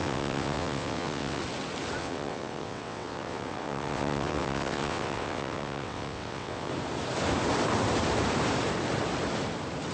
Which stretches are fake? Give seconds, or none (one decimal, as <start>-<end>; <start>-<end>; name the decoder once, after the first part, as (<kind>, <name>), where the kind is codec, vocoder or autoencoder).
0.0-1.4 (vocoder, WaveNeXt); 2.0-6.7